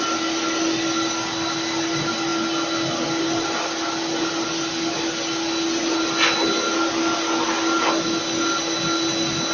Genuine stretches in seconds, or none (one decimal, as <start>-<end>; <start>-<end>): 0.0-9.5